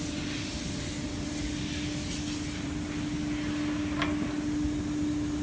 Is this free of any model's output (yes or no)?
yes